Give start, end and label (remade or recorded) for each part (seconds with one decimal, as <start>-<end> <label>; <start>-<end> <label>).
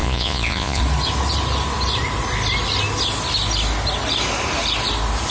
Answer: 0.0-0.8 remade; 0.8-5.3 recorded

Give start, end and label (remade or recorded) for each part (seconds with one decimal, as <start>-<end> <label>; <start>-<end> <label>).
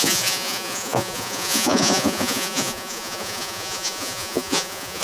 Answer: 0.0-5.0 remade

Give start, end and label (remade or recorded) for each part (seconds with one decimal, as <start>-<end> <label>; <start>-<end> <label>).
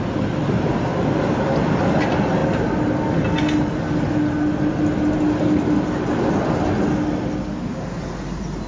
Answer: 0.0-8.7 recorded